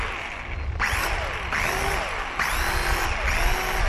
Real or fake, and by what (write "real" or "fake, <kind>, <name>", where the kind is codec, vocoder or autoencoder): real